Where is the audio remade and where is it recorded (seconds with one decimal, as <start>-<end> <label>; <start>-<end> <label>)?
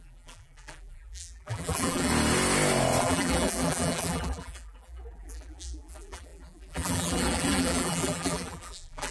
0.0-2.1 remade; 2.1-3.0 recorded; 3.0-9.1 remade